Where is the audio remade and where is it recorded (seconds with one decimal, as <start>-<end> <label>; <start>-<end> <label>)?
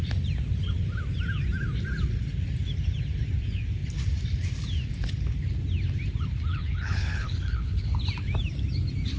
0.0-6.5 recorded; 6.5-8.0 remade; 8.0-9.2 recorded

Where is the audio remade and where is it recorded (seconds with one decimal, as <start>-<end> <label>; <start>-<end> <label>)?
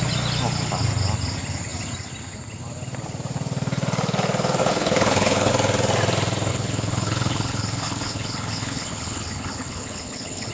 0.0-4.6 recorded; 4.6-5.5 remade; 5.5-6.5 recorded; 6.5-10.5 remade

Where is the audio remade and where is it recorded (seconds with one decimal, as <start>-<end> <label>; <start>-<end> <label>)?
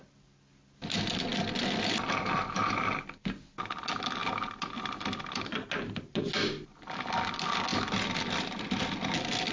0.0-9.5 recorded